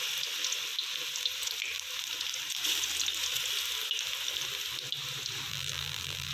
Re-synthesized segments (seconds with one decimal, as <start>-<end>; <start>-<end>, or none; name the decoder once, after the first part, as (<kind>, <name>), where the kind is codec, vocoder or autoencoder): 5.5-6.3 (vocoder, BigVGAN v2)